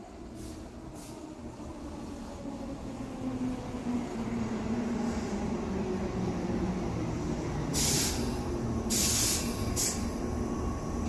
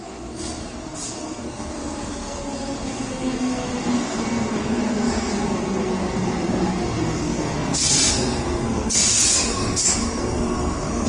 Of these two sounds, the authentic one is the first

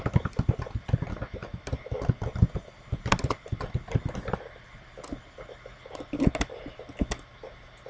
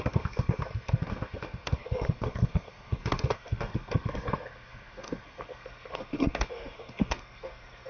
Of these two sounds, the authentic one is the first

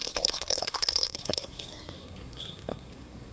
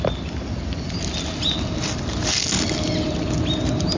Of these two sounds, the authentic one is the second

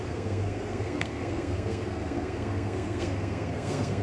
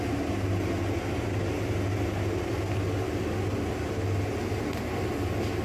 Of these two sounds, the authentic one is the second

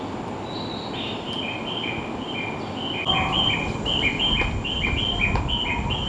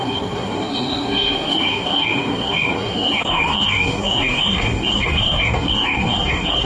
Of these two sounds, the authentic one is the first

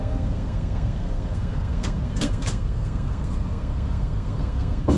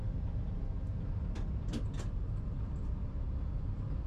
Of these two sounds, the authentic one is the second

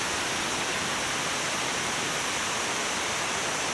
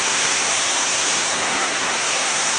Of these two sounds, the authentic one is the first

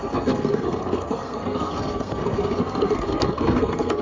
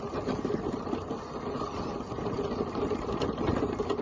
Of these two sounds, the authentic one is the second